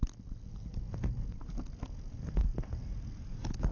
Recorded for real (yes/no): yes